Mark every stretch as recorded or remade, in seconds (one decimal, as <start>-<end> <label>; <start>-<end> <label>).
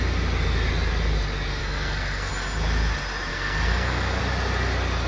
0.0-1.6 recorded; 1.6-2.3 remade; 2.3-3.3 recorded; 3.3-4.2 remade; 4.2-5.1 recorded